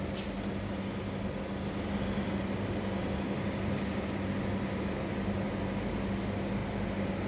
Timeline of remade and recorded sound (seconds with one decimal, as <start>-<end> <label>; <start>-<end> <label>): 0.0-7.3 recorded